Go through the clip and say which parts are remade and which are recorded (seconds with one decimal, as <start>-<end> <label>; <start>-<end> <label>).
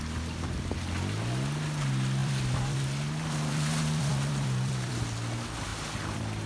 0.0-2.2 recorded; 2.2-4.9 remade; 4.9-5.7 recorded; 5.7-6.5 remade